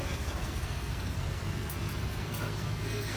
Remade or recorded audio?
remade